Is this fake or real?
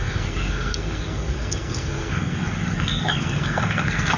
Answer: fake